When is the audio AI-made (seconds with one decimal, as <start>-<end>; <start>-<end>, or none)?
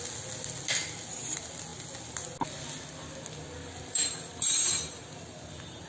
none